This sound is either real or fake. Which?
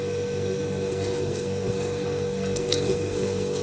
fake